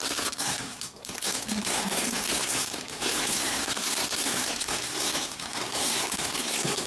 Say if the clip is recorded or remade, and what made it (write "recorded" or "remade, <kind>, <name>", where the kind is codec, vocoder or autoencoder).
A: remade, codec, SNAC